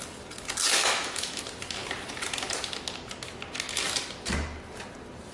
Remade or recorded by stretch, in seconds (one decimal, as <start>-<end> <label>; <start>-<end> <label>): 0.0-0.7 recorded; 0.7-1.4 remade; 1.4-5.3 recorded